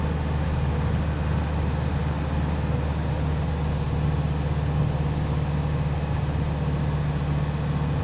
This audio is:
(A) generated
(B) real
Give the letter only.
B